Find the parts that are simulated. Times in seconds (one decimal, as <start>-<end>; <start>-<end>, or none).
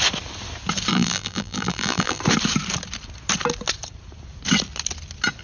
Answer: 0.9-2.2